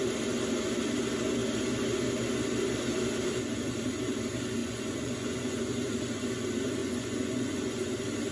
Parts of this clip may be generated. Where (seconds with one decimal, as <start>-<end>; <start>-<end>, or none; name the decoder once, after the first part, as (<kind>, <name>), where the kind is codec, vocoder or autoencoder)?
4.6-6.3 (vocoder, Vocos); 6.8-7.9